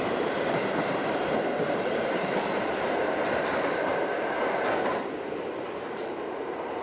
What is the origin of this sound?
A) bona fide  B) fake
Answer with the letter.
B